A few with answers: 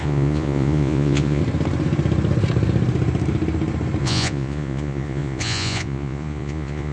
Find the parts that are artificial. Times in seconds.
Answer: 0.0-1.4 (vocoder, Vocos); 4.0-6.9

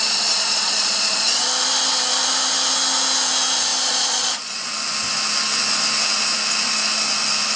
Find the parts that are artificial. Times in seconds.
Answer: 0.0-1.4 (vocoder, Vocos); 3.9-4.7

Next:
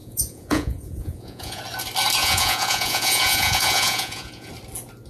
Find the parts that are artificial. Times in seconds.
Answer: 0.0-1.6 (vocoder, Vocos); 2.2-4.5

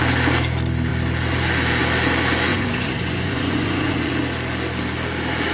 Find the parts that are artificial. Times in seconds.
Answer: 2.5-4.1 (vocoder, Vocos)

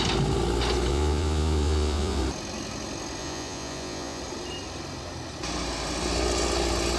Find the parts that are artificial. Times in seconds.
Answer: 0.9-2.2 (vocoder, Vocos); 3.2-4.2

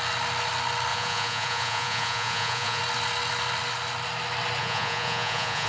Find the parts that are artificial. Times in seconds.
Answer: 0.9-2.8 (vocoder, Vocos); 4.6-5.7

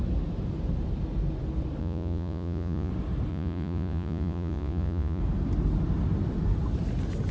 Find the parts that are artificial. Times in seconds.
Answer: 1.8-2.9 (vocoder, Vocos); 3.3-5.2

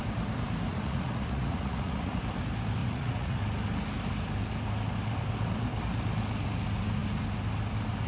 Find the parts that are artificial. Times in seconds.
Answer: 0.7-2.2 (vocoder, Vocos); 2.8-3.4